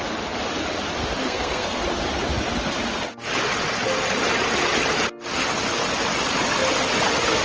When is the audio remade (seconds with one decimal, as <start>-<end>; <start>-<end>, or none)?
1.2-1.8